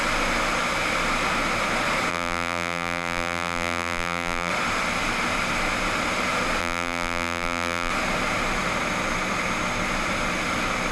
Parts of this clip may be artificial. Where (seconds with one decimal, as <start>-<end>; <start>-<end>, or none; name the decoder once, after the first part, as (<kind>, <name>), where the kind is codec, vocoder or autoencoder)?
2.1-4.5 (vocoder, BigVGAN v2); 6.6-7.9